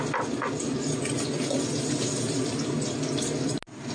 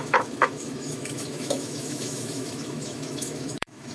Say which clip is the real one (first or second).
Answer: first